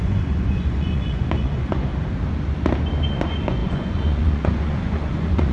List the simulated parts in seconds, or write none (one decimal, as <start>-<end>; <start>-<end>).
0.0-1.9; 3.1-5.5